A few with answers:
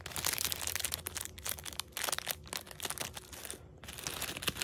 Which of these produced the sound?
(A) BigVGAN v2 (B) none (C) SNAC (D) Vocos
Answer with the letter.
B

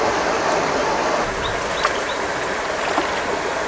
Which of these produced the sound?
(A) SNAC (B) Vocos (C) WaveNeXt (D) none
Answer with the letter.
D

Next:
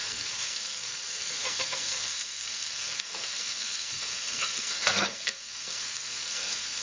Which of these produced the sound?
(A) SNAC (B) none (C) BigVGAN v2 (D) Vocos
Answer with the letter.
A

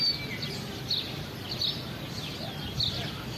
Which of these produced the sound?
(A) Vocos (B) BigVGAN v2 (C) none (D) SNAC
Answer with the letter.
C